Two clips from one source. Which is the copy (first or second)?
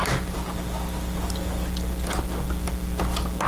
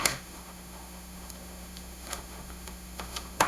second